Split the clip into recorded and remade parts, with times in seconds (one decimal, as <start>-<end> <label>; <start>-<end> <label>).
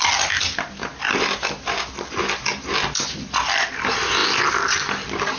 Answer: 0.0-5.4 recorded